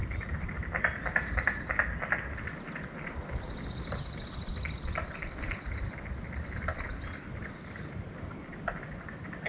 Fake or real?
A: real